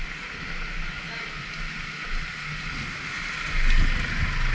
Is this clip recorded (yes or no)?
yes